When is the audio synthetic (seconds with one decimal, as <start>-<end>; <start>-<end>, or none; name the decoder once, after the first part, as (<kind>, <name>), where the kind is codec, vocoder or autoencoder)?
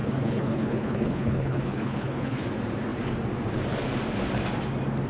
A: 0.0-2.4 (codec, HILCodec)